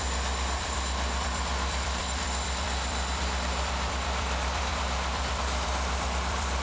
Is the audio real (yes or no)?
no